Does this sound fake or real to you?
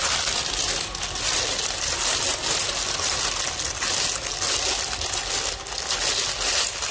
real